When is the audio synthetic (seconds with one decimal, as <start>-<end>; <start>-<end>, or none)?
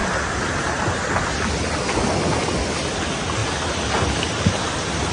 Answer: none